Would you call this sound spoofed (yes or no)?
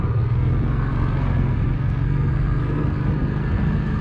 yes